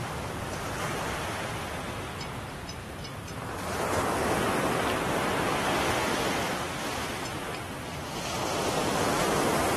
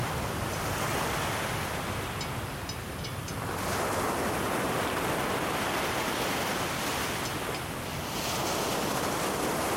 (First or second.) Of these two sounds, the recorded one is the second